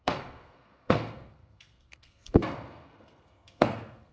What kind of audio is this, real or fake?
fake